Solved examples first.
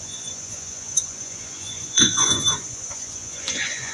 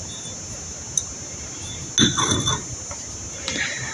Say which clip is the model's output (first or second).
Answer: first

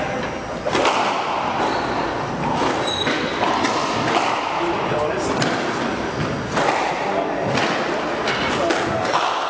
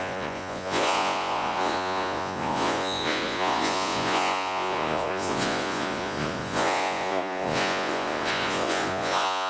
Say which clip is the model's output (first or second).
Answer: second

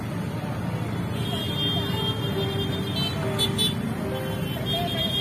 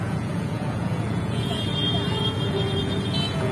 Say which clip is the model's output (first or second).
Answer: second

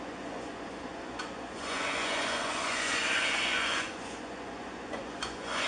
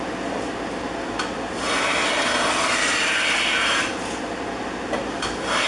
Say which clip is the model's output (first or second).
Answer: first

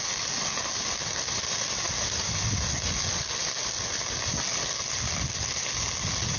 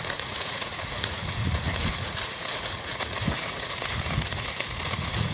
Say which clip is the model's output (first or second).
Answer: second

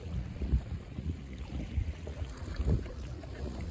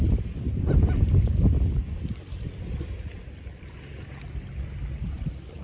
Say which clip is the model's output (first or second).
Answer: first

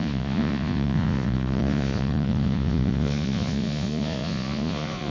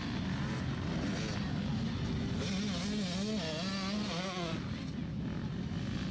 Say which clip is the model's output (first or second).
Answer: first